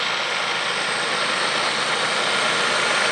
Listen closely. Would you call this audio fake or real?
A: real